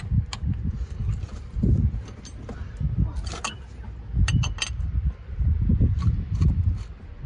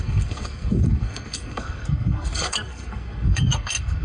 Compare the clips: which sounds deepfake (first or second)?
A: second